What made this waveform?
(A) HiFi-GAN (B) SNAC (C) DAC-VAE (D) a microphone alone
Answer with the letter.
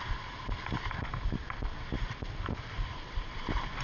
D